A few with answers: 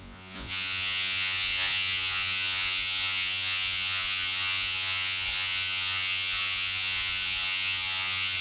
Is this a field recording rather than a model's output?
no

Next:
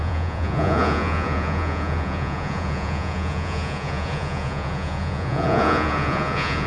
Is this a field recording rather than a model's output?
no